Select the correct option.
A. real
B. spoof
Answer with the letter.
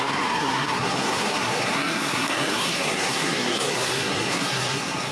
B